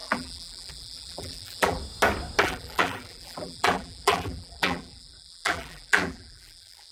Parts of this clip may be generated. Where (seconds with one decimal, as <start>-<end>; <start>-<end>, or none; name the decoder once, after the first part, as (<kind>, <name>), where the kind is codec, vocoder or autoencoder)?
0.0-1.8 (vocoder, BigVGAN v2); 2.4-6.9